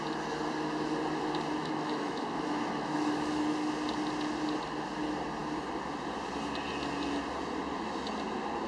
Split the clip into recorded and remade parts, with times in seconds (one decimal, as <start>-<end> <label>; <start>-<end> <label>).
0.0-1.6 recorded; 1.6-3.7 remade; 3.7-8.7 recorded